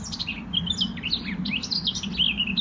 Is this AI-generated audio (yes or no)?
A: no